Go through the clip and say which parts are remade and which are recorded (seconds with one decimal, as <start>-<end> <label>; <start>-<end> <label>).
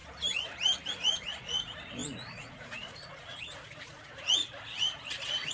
0.0-0.9 recorded; 0.9-5.5 remade